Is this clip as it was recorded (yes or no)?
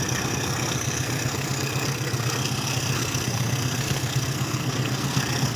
no